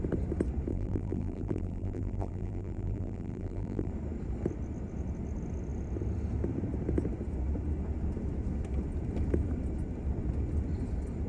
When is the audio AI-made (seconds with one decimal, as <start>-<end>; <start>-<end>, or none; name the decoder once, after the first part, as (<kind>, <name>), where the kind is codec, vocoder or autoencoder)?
0.7-3.9 (vocoder, BigVGAN v2)